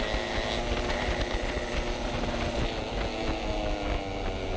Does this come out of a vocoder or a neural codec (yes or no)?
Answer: no